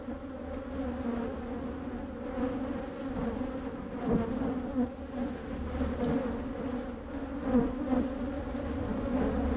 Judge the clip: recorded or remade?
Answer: recorded